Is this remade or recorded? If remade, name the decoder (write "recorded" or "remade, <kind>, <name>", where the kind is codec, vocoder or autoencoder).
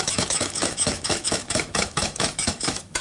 remade, autoencoder, DAC-VAE